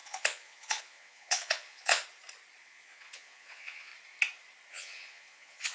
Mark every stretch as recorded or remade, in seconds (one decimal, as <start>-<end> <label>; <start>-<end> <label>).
0.0-2.0 remade; 2.0-2.6 recorded; 2.6-3.9 remade; 3.9-4.7 recorded; 4.7-5.7 remade